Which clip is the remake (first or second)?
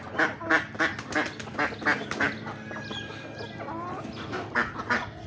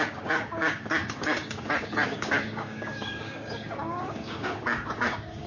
second